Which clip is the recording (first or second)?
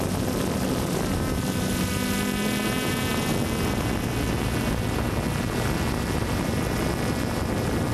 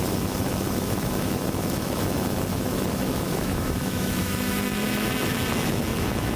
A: first